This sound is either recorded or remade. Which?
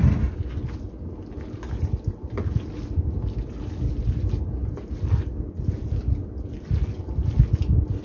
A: recorded